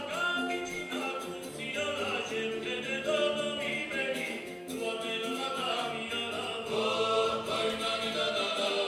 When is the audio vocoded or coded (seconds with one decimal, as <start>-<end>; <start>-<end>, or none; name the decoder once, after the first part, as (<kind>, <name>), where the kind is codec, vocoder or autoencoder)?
0.4-1.0 (codec, DAC); 4.0-5.9